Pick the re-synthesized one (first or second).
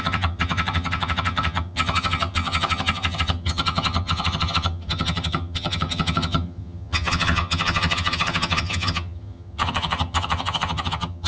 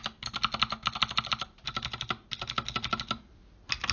first